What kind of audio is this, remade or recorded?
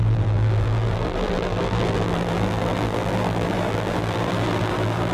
remade